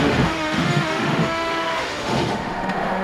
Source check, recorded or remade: remade